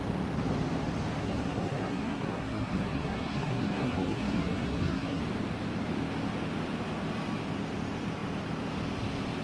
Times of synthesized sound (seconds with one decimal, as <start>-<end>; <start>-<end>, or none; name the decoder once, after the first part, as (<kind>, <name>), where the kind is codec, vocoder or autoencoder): 1.2-5.2 (codec, SNAC)